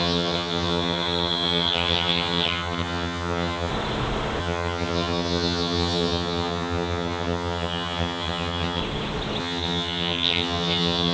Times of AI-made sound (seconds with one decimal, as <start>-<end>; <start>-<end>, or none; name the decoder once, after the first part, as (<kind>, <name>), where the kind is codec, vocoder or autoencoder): 0.0-3.7 (vocoder, HiFi-GAN); 4.4-8.8; 9.4-11.1